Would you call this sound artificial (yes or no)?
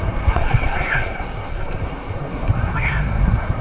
yes